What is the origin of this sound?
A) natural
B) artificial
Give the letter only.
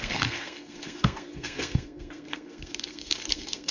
B